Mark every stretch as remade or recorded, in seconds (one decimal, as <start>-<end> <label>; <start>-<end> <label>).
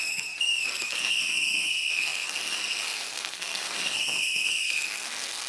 0.0-5.5 remade